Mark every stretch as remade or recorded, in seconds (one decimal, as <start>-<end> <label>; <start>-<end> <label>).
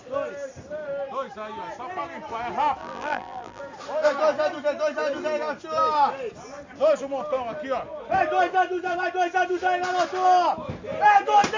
0.0-2.8 recorded; 2.8-3.6 remade; 3.6-11.6 recorded